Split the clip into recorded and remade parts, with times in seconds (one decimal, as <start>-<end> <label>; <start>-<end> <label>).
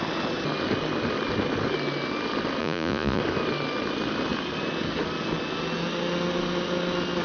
0.0-2.6 recorded; 2.6-3.2 remade; 3.2-7.2 recorded